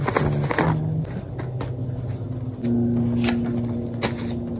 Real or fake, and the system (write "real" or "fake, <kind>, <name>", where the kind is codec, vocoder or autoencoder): real